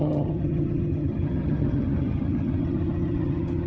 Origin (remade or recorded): remade